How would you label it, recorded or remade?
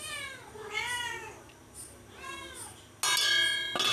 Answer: recorded